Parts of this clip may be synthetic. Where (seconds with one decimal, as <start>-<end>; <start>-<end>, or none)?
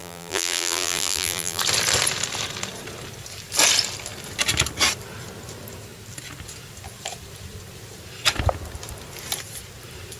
0.0-1.6